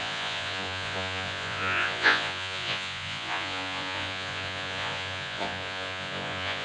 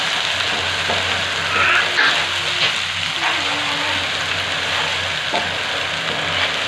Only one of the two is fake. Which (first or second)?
first